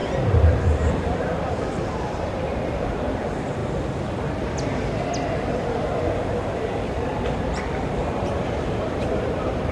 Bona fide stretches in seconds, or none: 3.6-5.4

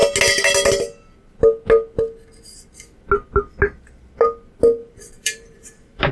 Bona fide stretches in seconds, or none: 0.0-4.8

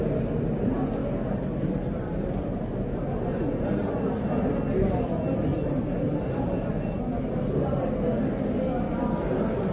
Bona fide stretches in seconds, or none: 0.0-1.0; 2.7-3.3; 4.0-5.5; 6.7-9.7

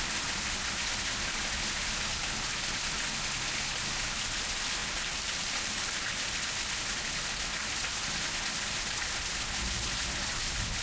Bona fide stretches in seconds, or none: 0.0-4.8; 6.2-10.8